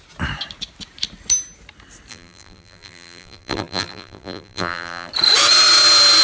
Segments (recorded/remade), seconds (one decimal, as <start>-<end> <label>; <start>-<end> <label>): 0.0-2.1 recorded; 2.1-5.1 remade; 5.1-6.2 recorded